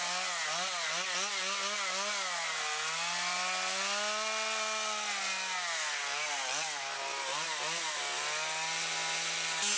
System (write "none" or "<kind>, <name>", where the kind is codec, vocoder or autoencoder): none